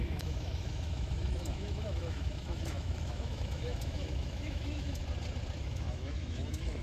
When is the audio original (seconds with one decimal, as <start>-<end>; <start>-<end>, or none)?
5.0-5.6